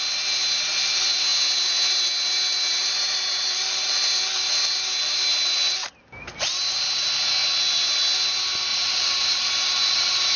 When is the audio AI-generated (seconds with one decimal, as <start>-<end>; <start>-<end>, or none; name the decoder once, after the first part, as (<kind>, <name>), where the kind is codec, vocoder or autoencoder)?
8.7-10.4 (vocoder, BigVGAN v2)